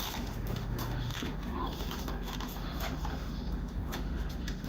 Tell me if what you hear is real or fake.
fake